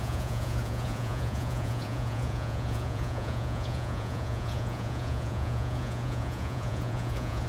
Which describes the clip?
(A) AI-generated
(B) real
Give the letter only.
A